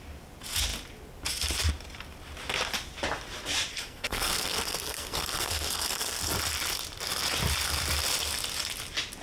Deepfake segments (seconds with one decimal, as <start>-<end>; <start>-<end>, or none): 3.7-6.2